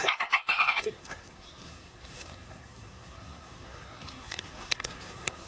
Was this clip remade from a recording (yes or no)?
yes